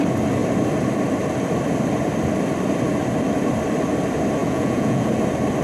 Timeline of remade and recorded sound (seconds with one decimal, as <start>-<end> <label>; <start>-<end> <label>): 0.0-4.4 recorded; 4.4-5.1 remade; 5.1-5.6 recorded